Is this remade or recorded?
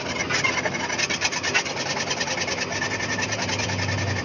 recorded